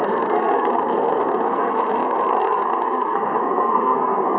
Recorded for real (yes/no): no